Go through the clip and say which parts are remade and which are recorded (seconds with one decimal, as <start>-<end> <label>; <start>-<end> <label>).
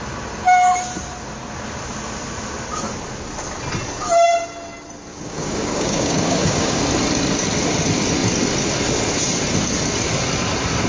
0.0-5.1 recorded; 5.1-6.8 remade; 6.8-10.9 recorded